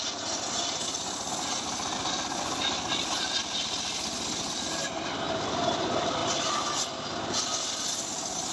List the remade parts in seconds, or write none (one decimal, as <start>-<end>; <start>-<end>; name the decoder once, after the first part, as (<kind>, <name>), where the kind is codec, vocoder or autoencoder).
none